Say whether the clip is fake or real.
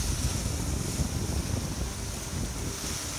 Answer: real